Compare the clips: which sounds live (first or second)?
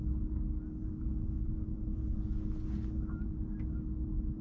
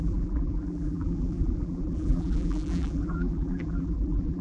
first